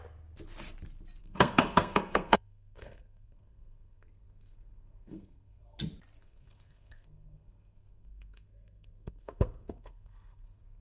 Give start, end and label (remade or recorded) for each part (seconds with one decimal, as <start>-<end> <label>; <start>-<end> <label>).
0.0-1.2 recorded; 1.2-5.8 remade; 5.8-6.2 recorded; 6.2-10.8 remade

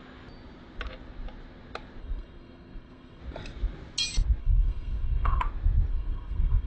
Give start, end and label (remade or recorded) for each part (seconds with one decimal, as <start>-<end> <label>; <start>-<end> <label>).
0.0-2.0 recorded; 2.0-3.2 remade; 3.2-4.4 recorded; 4.4-5.4 remade; 5.4-5.9 recorded; 5.9-6.7 remade

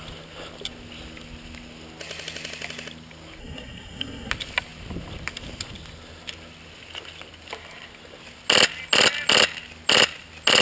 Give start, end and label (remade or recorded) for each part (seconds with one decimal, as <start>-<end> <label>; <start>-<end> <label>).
0.0-3.4 recorded; 3.4-4.3 remade; 4.3-10.6 recorded

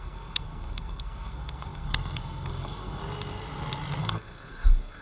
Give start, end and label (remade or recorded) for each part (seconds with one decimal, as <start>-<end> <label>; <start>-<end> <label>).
0.0-3.0 remade; 3.0-4.0 recorded; 4.0-5.0 remade